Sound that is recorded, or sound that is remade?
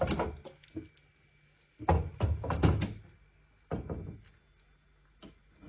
recorded